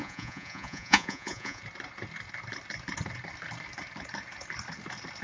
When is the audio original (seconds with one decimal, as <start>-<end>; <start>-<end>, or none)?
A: 1.6-5.2

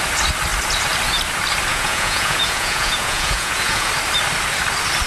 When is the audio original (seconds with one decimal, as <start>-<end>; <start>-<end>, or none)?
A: 0.0-1.7; 3.9-5.1